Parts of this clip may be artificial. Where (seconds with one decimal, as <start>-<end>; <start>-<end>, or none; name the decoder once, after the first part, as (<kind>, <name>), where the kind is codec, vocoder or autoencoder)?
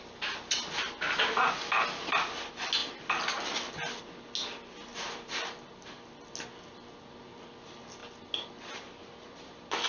4.9-5.7 (vocoder, BigVGAN v2)